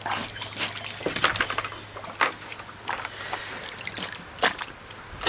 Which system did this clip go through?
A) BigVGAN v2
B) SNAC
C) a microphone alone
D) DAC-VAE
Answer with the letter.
C